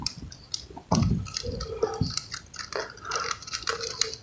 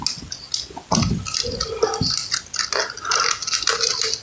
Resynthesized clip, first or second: first